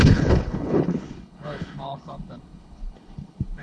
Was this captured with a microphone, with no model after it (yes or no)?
no